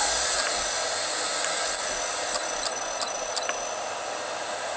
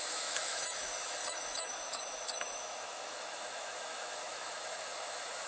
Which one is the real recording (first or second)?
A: first